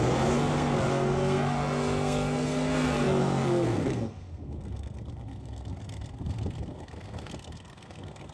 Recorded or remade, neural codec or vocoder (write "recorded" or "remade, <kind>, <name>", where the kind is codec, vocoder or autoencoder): remade, codec, SNAC